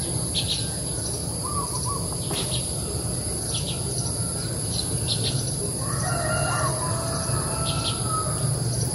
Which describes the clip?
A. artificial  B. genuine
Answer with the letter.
B